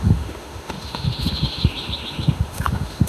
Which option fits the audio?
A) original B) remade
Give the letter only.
B